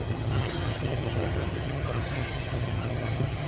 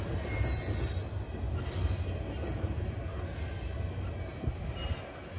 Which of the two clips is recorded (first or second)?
second